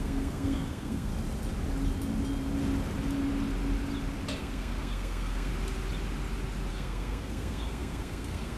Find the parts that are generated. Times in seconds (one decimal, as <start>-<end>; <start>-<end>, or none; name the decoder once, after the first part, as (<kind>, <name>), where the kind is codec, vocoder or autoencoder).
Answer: 0.0-1.1 (codec, SNAC); 4.4-5.5; 6.7-8.6